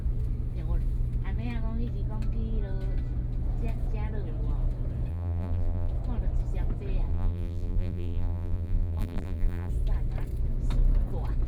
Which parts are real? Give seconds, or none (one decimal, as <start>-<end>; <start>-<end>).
0.0-5.1; 5.9-7.1; 9.7-11.5